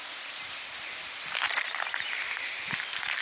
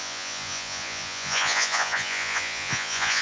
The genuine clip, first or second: first